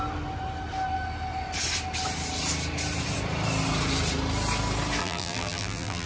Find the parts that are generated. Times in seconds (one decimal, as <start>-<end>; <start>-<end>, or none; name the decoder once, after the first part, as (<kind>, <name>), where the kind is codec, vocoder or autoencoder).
5.0-6.1 (vocoder, BigVGAN v2)